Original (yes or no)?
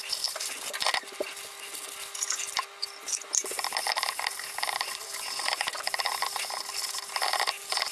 yes